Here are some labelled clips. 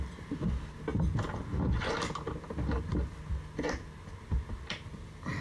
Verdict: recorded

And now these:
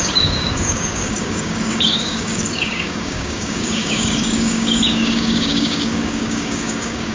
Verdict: remade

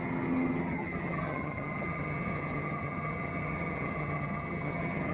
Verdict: remade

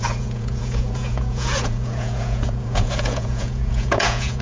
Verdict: remade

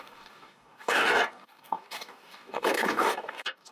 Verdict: remade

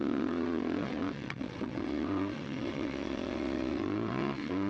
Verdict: remade